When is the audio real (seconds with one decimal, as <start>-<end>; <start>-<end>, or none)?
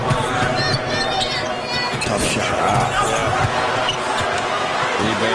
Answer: 0.0-5.3